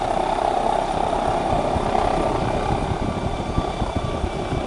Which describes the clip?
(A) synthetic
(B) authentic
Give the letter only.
B